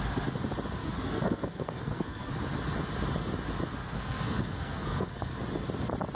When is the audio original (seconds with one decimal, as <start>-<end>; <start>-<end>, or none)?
0.0-0.8; 2.3-3.8; 5.3-6.1